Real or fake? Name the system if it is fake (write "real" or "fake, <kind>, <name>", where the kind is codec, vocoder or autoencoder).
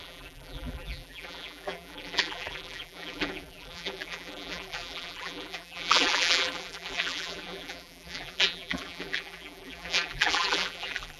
fake, vocoder, BigVGAN v2